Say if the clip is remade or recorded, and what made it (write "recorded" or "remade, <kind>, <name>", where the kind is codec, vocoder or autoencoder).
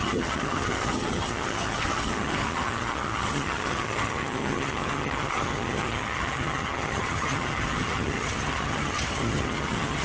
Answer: remade, vocoder, HiFi-GAN